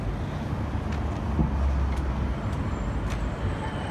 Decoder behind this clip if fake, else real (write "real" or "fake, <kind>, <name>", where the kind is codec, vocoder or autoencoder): real